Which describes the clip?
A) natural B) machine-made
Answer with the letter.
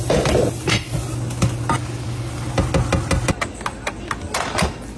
A